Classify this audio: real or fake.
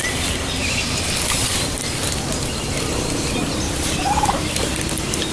real